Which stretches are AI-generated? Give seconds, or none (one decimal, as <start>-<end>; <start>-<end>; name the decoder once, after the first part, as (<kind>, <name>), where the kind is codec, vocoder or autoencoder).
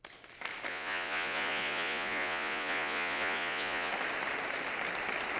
0.7-3.9 (vocoder, Vocos)